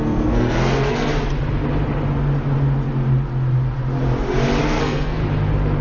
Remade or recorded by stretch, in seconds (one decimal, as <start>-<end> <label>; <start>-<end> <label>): 0.0-1.1 remade; 1.1-4.6 recorded; 4.6-5.2 remade; 5.2-5.8 recorded